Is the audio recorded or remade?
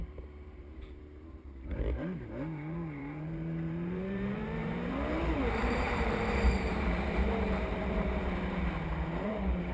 remade